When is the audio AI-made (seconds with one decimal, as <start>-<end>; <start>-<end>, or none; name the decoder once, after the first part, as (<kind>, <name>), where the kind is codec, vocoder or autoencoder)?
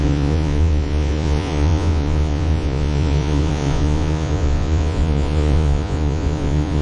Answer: 0.0-6.8 (vocoder, Vocos)